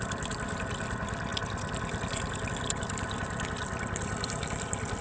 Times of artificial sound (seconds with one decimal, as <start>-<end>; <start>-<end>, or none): none